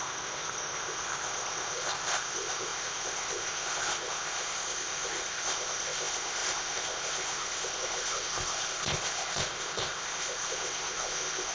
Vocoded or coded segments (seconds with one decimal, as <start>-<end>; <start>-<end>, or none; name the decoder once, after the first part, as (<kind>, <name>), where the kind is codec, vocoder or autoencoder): 0.0-11.5 (codec, ZipCodec)